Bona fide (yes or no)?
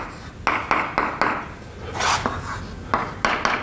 yes